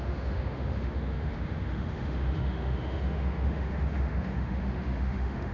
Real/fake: fake